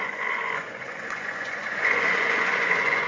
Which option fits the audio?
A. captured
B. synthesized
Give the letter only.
B